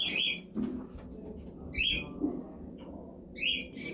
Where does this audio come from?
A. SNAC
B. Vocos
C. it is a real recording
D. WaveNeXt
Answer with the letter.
C